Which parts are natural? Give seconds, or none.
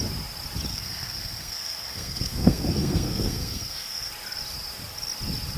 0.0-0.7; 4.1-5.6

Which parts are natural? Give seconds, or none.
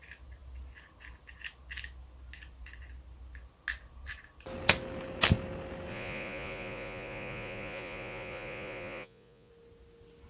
0.0-5.9; 9.5-10.3